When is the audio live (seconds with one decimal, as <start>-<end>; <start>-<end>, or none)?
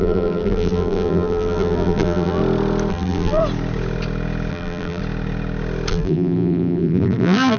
2.4-2.9; 3.4-4.5; 5.0-5.9